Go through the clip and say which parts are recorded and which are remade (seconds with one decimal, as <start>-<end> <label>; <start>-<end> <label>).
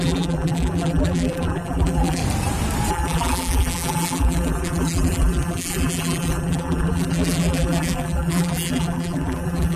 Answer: 0.0-2.2 remade; 2.2-2.9 recorded; 2.9-9.8 remade